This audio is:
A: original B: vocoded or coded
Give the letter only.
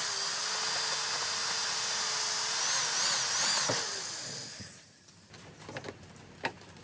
A